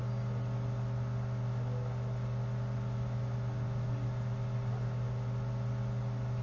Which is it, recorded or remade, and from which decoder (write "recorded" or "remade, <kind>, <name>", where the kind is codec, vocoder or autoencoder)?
recorded